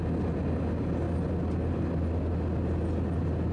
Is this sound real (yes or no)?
yes